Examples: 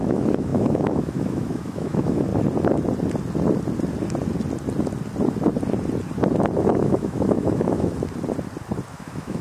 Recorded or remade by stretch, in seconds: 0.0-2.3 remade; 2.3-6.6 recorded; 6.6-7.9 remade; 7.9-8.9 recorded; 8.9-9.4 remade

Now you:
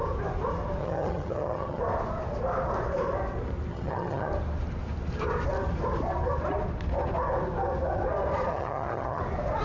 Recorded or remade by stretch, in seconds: 0.0-0.8 recorded; 0.8-1.8 remade; 1.8-3.7 recorded; 3.7-4.3 remade; 4.3-8.5 recorded; 8.5-9.2 remade; 9.2-9.6 recorded

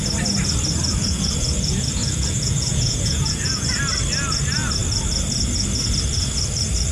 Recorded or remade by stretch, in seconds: 0.0-0.9 recorded; 0.9-3.8 remade; 3.8-6.9 recorded

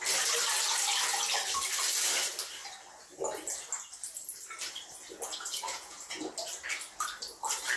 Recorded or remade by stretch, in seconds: 0.0-5.3 recorded; 5.3-6.2 remade; 6.2-7.8 recorded

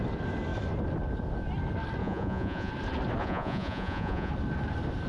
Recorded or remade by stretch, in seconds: 0.0-2.0 recorded; 2.0-2.7 remade; 2.7-3.2 recorded; 3.2-4.3 remade; 4.3-5.1 recorded

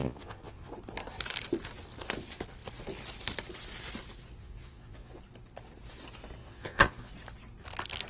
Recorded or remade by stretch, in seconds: 0.0-0.7 remade; 0.7-4.4 recorded; 4.4-5.1 remade; 5.1-6.4 recorded; 6.4-7.1 remade; 7.1-8.1 recorded

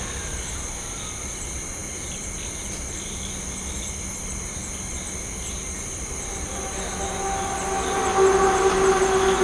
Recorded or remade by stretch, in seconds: 0.0-9.4 recorded